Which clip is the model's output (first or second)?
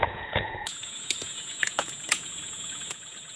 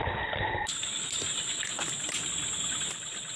first